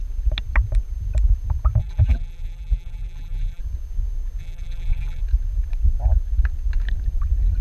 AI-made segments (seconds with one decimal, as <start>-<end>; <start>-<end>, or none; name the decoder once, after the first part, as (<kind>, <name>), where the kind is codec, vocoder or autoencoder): 1.8-3.6 (vocoder, BigVGAN v2); 4.4-5.2